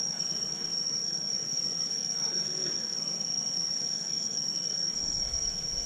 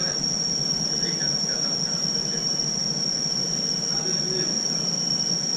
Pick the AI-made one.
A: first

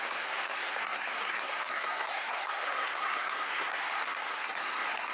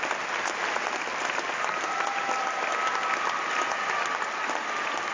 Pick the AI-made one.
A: first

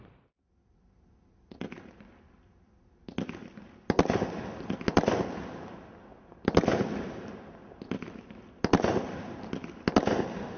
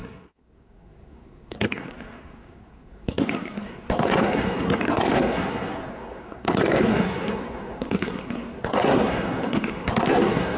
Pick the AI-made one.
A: second